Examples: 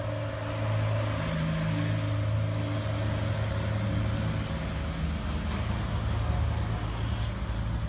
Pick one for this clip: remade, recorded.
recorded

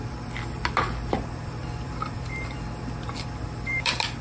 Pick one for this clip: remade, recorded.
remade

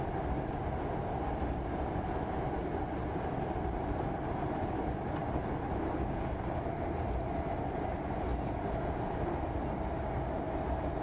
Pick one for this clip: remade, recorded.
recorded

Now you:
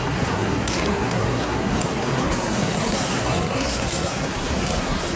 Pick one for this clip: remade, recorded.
remade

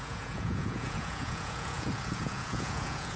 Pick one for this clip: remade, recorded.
remade